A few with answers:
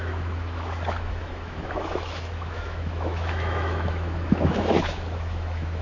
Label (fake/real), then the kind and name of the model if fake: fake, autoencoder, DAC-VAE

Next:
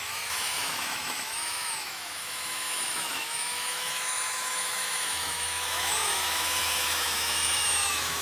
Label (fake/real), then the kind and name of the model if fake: fake, autoencoder, DAC-VAE